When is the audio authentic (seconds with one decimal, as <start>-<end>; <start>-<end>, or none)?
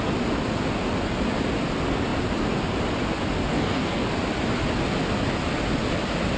0.0-3.5; 4.1-6.4